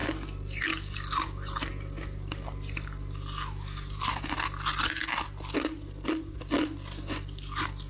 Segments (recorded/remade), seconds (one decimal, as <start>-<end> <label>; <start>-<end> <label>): 0.0-7.9 recorded